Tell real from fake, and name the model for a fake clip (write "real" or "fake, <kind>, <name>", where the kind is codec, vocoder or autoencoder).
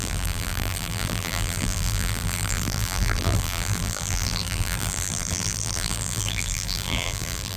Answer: fake, vocoder, BigVGAN v2